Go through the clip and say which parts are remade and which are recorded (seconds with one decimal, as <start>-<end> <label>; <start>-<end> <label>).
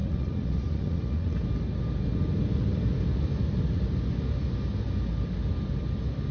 0.0-1.4 remade; 1.4-6.3 recorded